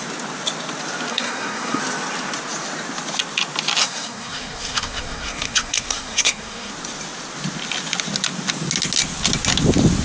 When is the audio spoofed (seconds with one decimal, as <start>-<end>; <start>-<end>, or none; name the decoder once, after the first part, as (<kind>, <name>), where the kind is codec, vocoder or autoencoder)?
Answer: 1.1-1.8 (codec, SNAC); 3.8-6.7